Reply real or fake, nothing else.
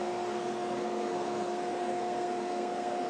fake